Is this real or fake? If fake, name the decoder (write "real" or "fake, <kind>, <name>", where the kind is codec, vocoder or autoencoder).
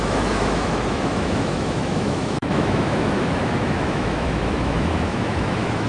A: fake, autoencoder, DAC-VAE